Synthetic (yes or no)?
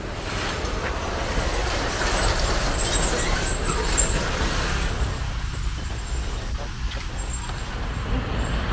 no